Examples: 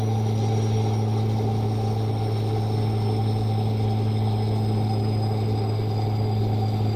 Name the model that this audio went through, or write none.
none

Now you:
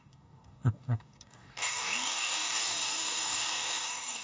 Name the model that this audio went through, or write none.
codec, DAC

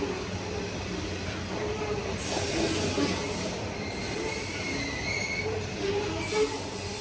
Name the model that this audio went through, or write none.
none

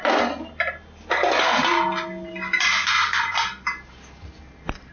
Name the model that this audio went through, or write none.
none